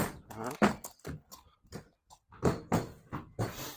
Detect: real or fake real